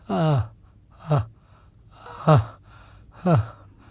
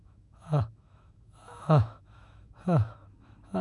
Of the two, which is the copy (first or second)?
second